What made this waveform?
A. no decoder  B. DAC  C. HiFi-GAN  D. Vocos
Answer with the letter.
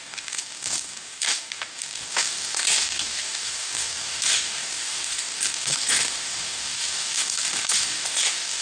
B